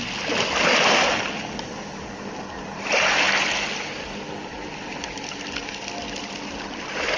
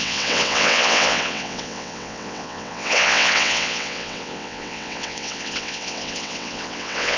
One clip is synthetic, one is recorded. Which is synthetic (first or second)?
second